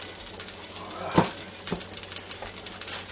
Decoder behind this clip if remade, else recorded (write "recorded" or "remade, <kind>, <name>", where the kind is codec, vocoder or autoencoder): recorded